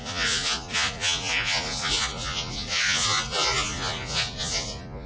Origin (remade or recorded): remade